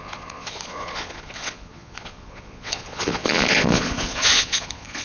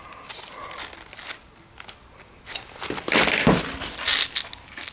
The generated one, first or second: first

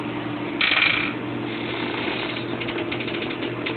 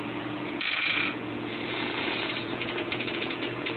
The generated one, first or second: second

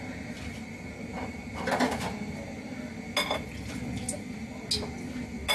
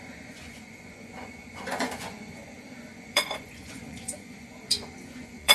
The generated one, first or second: second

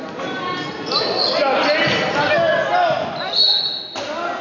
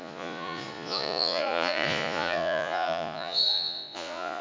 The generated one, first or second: second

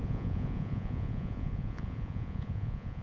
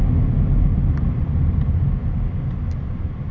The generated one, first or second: first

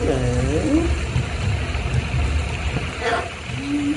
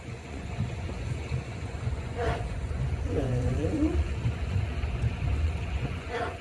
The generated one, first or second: second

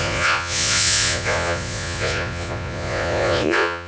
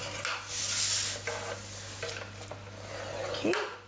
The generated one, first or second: first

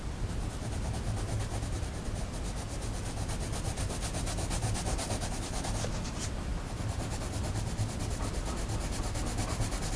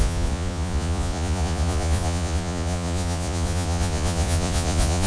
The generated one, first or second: second